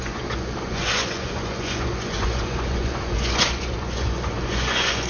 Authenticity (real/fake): fake